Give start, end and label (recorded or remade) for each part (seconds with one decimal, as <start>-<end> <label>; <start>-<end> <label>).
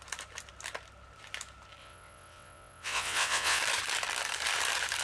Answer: 0.0-1.8 recorded; 1.8-3.6 remade; 3.6-5.0 recorded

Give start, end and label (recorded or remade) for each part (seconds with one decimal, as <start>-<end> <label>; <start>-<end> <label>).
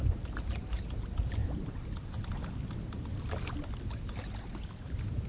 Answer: 0.0-5.3 recorded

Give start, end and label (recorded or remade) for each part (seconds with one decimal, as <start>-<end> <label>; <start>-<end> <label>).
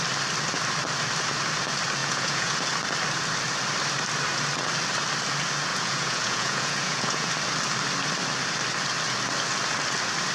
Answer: 0.0-2.0 recorded; 2.0-2.6 remade; 2.6-5.7 recorded; 5.7-7.3 remade; 7.3-10.3 recorded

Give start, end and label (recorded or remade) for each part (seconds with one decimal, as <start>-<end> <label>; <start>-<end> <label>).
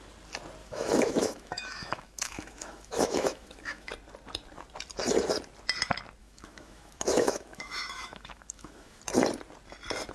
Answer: 0.0-0.6 recorded; 0.6-3.9 remade; 3.9-6.2 recorded; 6.2-9.0 remade; 9.0-10.1 recorded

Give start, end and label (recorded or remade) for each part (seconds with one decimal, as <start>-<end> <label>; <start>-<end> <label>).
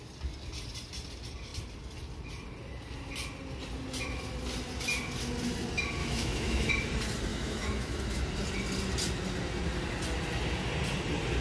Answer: 0.0-6.0 recorded; 6.0-6.7 remade; 6.7-7.3 recorded; 7.3-8.2 remade; 8.2-11.4 recorded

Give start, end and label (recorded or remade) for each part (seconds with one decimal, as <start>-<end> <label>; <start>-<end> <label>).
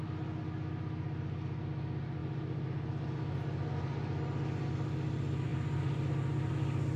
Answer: 0.0-7.0 recorded